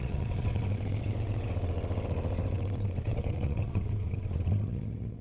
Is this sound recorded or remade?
remade